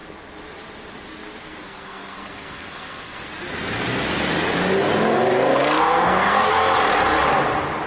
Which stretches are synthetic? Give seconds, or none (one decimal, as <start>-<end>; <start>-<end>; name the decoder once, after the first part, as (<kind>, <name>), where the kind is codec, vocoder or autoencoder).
1.4-3.3 (codec, SNAC); 5.5-6.5